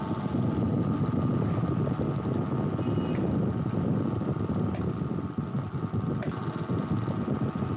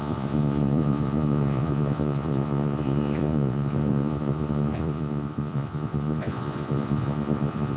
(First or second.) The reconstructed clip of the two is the second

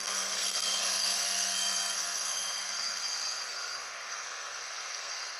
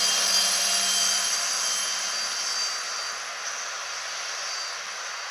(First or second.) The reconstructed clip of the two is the first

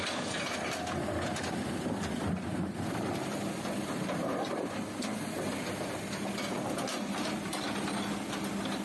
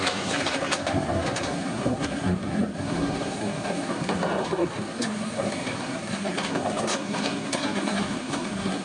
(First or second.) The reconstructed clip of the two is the second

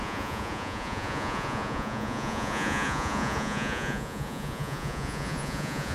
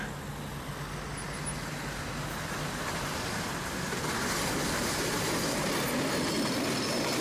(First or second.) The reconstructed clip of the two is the first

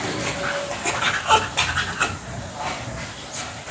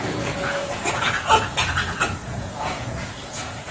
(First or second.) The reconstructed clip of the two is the second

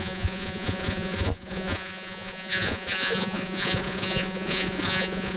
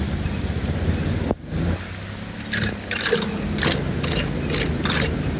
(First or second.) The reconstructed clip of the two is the first